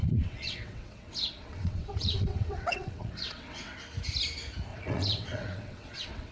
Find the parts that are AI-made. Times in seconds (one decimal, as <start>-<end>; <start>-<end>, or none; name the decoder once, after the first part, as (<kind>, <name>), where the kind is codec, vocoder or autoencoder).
0.0-3.8 (vocoder, WaveNeXt); 4.7-6.3